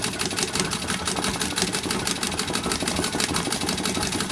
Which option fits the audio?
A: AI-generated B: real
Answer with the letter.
B